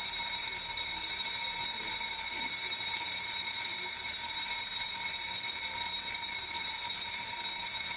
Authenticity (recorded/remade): remade